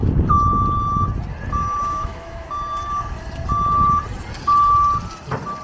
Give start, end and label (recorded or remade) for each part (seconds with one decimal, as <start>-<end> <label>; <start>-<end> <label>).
0.0-1.8 recorded; 1.8-2.5 remade; 2.5-5.6 recorded